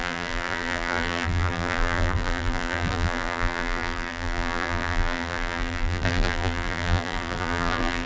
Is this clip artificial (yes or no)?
yes